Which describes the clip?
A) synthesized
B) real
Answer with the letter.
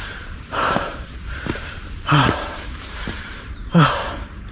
A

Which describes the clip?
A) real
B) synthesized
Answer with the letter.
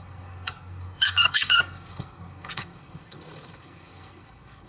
B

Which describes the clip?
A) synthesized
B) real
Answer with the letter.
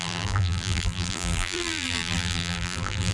A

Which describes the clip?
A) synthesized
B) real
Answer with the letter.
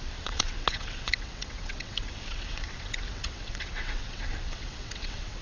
A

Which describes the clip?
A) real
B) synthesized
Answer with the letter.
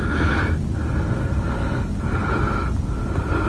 A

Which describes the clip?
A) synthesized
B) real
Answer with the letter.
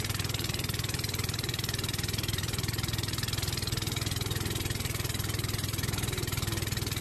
A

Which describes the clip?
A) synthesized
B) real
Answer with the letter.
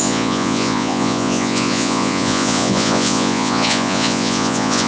A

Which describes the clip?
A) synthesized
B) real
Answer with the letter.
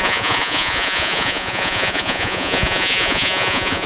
A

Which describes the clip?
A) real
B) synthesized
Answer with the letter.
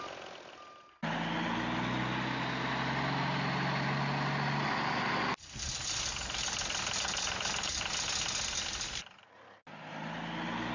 A